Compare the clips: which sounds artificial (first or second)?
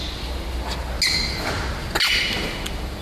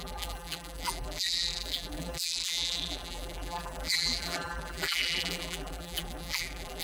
second